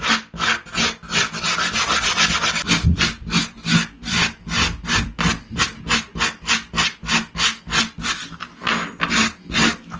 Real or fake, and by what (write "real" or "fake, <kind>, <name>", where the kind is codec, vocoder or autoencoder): real